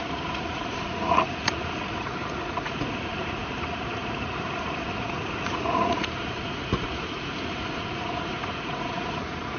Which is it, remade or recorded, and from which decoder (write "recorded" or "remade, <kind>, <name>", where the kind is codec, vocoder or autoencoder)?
remade, vocoder, Vocos